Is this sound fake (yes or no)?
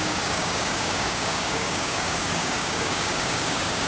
yes